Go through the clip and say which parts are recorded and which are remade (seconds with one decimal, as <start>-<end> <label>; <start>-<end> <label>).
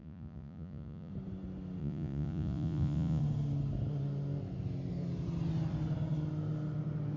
0.0-1.1 remade; 1.1-1.8 recorded; 1.8-3.2 remade; 3.2-7.2 recorded